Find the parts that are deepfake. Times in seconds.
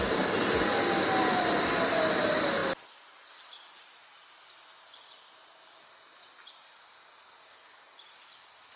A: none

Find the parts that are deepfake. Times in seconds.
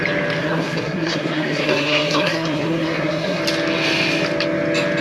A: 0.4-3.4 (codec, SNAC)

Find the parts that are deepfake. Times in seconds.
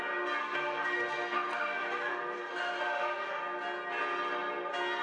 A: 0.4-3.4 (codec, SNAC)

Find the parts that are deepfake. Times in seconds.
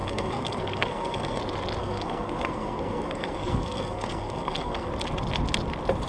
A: 0.0-1.4 (codec, SNAC); 1.8-4.9